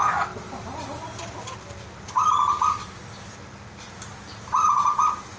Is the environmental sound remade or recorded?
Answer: recorded